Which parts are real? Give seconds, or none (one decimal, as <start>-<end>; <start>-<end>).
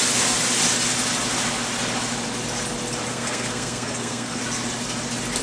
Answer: 0.0-3.1; 4.4-5.4